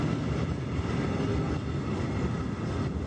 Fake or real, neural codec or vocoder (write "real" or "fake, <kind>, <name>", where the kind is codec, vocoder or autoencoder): real